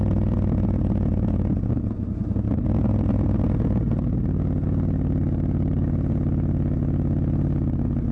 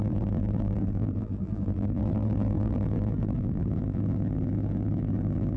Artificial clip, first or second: second